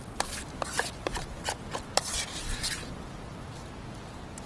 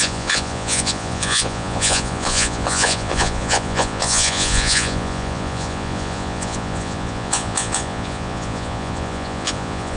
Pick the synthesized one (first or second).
second